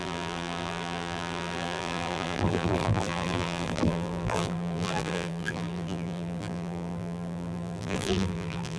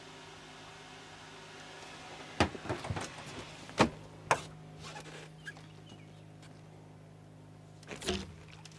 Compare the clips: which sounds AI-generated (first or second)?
first